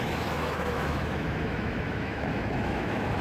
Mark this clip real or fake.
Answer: fake